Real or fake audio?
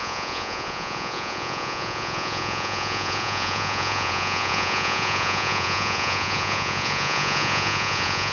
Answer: fake